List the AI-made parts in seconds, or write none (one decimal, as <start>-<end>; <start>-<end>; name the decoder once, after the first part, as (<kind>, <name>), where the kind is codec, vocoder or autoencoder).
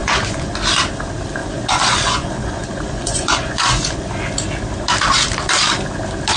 0.0-0.5 (vocoder, Vocos); 1.4-4.1